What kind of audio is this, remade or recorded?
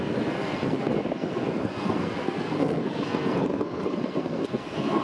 remade